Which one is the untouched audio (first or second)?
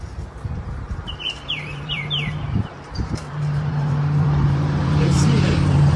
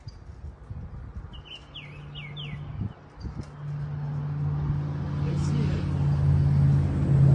second